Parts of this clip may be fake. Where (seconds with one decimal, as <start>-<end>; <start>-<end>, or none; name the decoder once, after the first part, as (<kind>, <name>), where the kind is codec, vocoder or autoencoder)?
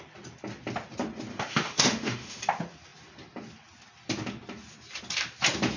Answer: 1.3-2.4 (autoencoder, DAC-VAE)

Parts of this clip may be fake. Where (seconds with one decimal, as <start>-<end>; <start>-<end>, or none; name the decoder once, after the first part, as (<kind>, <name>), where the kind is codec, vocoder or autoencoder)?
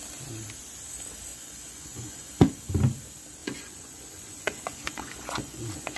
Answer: 1.3-2.5 (vocoder, Vocos); 3.4-6.0